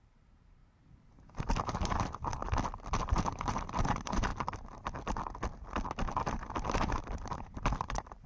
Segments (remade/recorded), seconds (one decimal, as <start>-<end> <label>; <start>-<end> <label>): 0.0-0.6 remade; 0.6-1.4 recorded; 1.4-2.3 remade; 2.3-3.0 recorded; 3.0-4.3 remade; 4.3-6.2 recorded; 6.2-8.3 remade